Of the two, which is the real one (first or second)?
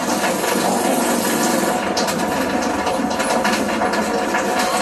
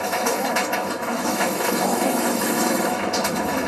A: first